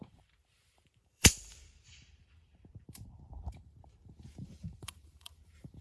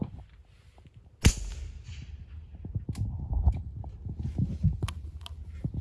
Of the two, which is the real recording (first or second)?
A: second